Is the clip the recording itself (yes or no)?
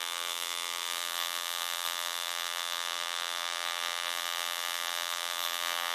no